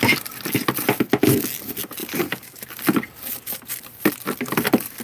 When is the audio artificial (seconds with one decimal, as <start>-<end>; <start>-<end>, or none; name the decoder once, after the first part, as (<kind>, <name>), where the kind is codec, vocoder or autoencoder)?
2.0-4.1 (vocoder, BigVGAN v2)